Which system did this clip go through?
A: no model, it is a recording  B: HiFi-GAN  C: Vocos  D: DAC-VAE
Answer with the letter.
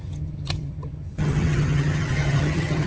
B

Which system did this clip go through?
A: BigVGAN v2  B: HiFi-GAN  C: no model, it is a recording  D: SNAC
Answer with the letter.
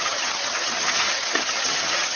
B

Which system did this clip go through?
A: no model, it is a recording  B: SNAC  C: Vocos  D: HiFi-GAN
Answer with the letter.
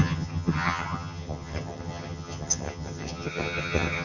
D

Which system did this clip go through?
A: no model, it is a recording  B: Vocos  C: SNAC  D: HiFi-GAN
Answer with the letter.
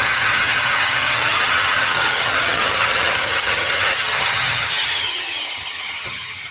D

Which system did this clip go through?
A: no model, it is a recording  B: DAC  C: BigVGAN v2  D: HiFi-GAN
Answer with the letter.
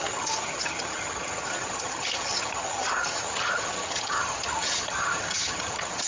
D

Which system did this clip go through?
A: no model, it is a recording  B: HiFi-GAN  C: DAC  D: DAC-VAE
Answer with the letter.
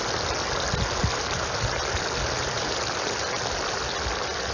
A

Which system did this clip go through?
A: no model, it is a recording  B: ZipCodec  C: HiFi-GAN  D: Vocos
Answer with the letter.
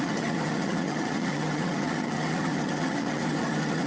C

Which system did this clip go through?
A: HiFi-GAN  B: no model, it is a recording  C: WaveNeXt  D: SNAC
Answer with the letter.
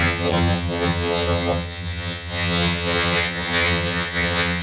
A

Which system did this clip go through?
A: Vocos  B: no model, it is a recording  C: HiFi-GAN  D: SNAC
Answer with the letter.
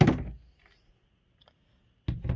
B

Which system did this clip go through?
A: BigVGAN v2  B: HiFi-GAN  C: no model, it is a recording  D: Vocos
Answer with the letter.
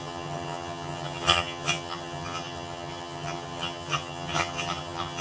B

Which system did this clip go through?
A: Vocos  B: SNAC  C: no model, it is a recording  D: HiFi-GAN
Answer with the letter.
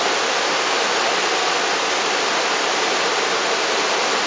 C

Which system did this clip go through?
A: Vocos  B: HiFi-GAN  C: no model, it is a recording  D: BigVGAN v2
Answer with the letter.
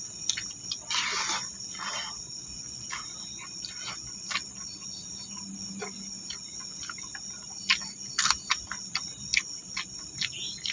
C